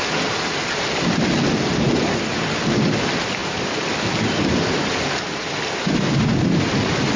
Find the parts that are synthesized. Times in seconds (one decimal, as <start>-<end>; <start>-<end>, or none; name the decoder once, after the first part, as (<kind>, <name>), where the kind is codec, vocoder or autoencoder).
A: 3.4-5.6 (vocoder, BigVGAN v2)